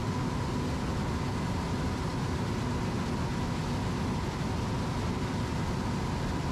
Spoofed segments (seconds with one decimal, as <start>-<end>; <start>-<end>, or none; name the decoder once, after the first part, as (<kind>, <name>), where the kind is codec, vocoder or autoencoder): none